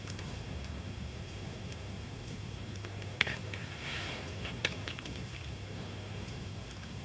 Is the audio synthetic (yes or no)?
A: yes